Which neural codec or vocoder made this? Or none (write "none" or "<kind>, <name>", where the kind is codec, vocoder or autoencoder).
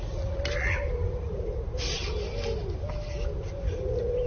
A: none